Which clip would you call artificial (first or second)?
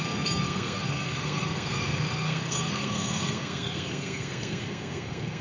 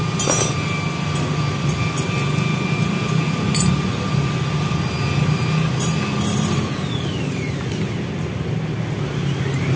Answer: first